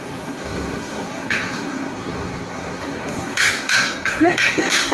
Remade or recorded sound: remade